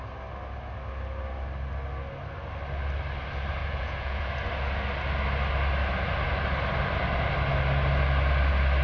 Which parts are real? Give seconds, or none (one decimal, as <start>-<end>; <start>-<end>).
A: 0.0-3.6; 4.3-8.8